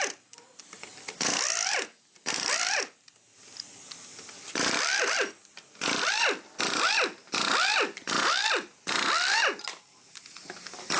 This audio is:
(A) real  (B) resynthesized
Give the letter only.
A